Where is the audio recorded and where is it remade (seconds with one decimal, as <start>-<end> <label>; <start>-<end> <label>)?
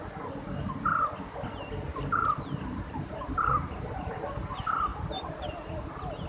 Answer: 0.0-1.9 recorded; 1.9-4.3 remade; 4.3-6.3 recorded